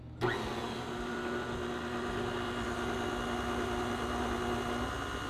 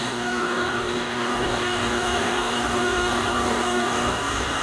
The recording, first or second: first